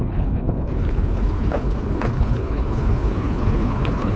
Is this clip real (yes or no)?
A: no